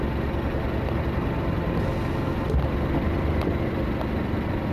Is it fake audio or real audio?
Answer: real